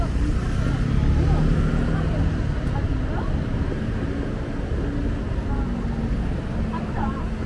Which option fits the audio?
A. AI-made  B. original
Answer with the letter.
B